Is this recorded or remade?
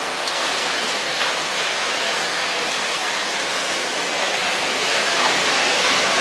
remade